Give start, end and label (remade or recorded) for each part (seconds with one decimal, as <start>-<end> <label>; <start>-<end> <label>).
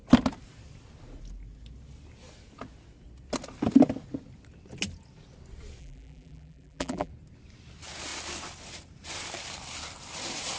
0.0-5.8 recorded; 5.8-7.1 remade; 7.1-10.6 recorded